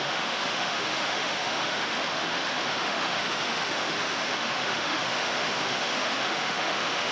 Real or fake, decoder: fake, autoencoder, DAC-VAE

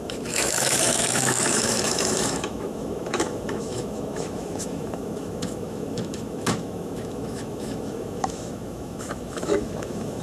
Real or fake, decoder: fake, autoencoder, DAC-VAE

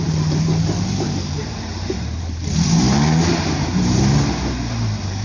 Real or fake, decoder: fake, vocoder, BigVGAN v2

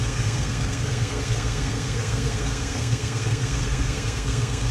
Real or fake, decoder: fake, codec, SNAC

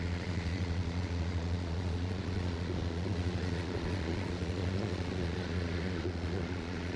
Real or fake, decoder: fake, vocoder, Vocos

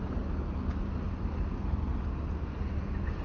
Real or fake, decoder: real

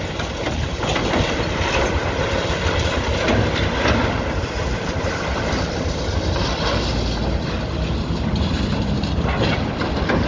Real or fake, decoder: real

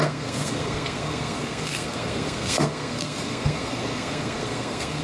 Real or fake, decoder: fake, codec, SNAC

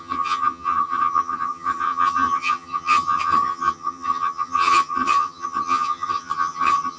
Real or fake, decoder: fake, vocoder, HiFi-GAN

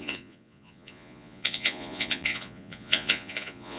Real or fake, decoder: fake, vocoder, Vocos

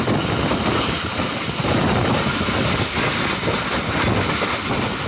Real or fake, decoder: real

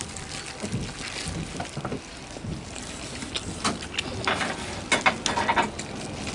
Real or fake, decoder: real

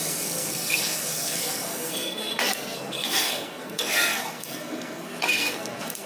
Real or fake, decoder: fake, codec, SNAC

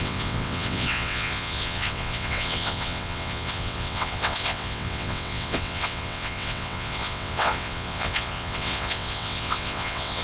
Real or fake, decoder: fake, vocoder, WaveNeXt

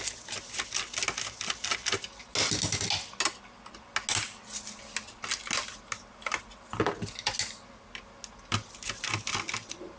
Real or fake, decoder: real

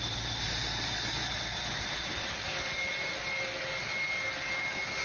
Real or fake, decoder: real